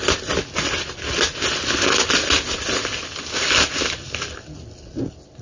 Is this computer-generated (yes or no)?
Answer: no